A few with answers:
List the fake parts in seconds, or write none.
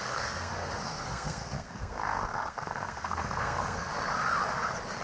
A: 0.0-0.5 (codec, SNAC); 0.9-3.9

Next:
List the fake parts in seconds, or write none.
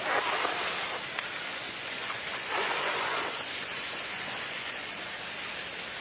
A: 1.5-5.1 (vocoder, Vocos)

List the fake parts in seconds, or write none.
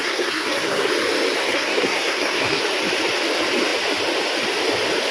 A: 0.0-0.9 (codec, SNAC); 1.4-2.6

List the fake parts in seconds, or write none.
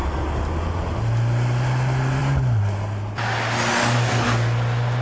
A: none